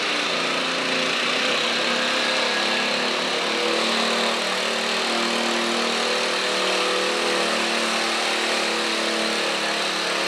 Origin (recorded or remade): recorded